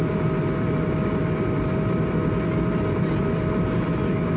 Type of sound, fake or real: fake